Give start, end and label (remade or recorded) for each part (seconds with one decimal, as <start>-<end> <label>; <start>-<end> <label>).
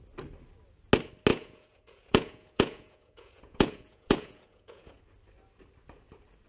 0.0-1.3 recorded; 1.3-5.0 remade; 5.0-6.5 recorded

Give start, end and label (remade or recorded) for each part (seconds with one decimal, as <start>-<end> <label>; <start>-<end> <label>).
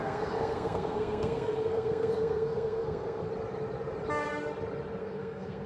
0.0-3.3 remade; 3.3-5.0 recorded; 5.0-5.7 remade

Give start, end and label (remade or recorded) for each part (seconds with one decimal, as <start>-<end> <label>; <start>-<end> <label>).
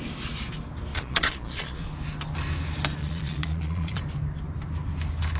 0.0-0.9 recorded; 0.9-1.8 remade; 1.8-3.0 recorded; 3.0-4.0 remade; 4.0-5.4 recorded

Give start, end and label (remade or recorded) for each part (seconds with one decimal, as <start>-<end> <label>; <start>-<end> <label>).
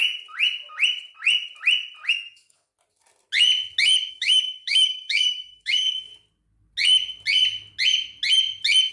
0.0-2.1 recorded; 2.1-2.7 remade; 2.7-4.1 recorded; 4.1-6.1 remade; 6.1-8.9 recorded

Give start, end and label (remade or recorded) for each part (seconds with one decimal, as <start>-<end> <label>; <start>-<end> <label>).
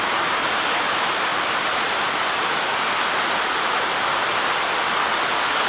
0.0-5.7 recorded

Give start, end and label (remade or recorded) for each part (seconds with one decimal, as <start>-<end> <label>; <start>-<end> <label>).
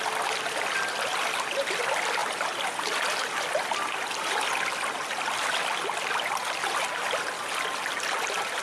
0.0-8.6 recorded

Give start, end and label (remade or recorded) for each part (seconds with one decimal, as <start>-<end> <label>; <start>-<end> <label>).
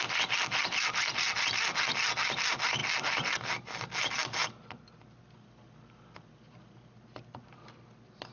0.0-8.3 recorded